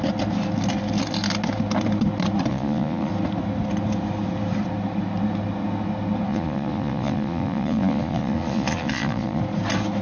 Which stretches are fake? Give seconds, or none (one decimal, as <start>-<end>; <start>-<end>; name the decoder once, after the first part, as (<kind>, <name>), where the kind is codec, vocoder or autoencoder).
2.5-3.1 (vocoder, Vocos); 6.3-9.4